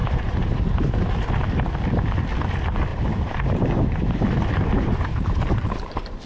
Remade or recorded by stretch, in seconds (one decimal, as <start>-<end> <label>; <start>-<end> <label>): 0.0-0.8 remade; 0.8-2.9 recorded; 2.9-6.3 remade